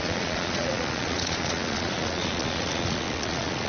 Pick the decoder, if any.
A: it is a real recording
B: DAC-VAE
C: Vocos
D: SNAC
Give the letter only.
C